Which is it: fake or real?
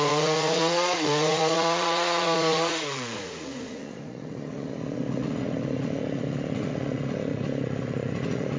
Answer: fake